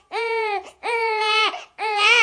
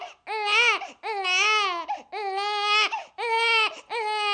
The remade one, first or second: first